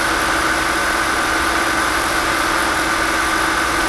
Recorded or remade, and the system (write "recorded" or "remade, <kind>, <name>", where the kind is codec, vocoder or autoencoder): recorded